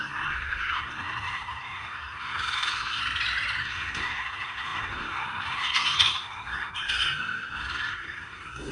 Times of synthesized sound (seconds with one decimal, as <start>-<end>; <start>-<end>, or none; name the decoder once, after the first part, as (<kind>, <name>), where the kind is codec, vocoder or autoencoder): 0.0-3.0 (codec, SNAC); 3.6-8.7